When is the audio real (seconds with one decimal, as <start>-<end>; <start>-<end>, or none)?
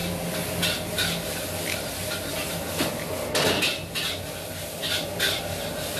0.0-6.0